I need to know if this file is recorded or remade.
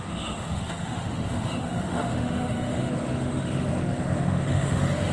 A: remade